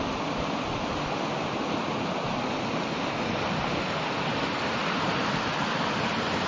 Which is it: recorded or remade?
recorded